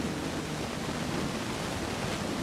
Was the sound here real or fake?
real